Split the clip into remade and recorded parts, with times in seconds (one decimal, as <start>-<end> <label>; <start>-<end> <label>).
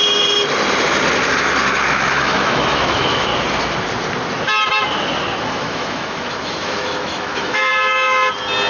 0.0-1.9 recorded; 1.9-3.3 remade; 3.3-5.5 recorded; 5.5-7.7 remade; 7.7-8.7 recorded